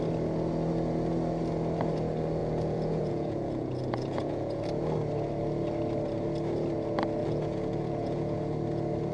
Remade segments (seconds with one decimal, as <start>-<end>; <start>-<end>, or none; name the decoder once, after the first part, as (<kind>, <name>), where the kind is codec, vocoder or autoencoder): 2.4-4.6 (vocoder, Vocos); 7.2-8.4